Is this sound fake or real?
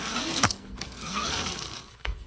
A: fake